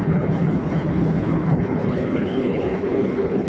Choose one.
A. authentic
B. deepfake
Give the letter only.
B